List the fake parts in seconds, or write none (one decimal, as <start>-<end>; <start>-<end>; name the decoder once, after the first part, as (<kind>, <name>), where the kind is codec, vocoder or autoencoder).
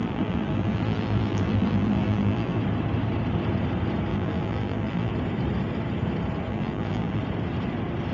0.0-2.6 (vocoder, BigVGAN v2); 4.1-5.1; 6.5-7.2